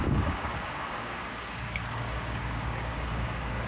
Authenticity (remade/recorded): remade